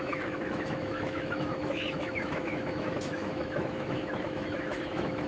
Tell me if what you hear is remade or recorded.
remade